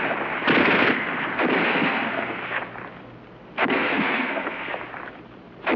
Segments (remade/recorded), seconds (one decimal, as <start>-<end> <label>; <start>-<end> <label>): 0.0-0.6 recorded; 0.6-1.1 remade; 1.1-1.7 recorded; 1.7-2.6 remade; 2.6-3.6 recorded; 3.6-4.7 remade; 4.7-5.8 recorded